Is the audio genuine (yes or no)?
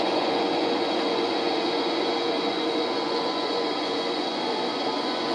no